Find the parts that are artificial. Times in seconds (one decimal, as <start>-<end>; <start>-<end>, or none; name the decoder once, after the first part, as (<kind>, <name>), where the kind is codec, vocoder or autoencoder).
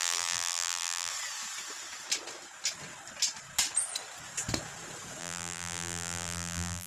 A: 0.0-1.1 (vocoder, BigVGAN v2); 5.2-6.9